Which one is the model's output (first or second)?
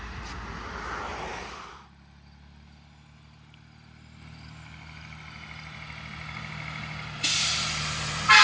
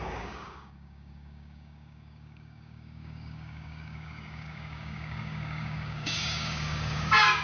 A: second